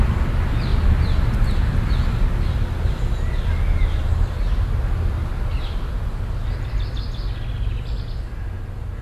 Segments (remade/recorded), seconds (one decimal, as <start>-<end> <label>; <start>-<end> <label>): 0.0-9.0 recorded

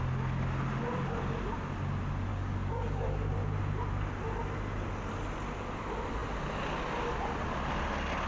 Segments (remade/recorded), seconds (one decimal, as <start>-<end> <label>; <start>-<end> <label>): 0.0-2.3 recorded; 2.3-3.3 remade; 3.3-8.3 recorded

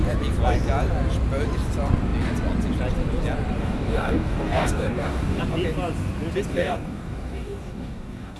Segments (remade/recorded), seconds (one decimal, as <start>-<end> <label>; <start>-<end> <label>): 0.0-3.6 recorded; 3.6-5.4 remade; 5.4-6.5 recorded; 6.5-8.4 remade

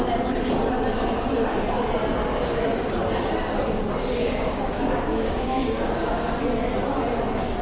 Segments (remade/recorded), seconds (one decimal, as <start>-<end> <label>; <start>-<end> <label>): 0.0-2.2 recorded; 2.2-2.9 remade; 2.9-4.2 recorded; 4.2-6.3 remade; 6.3-7.6 recorded